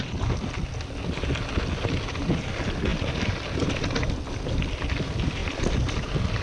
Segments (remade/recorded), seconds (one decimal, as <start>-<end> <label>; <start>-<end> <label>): 0.0-6.4 recorded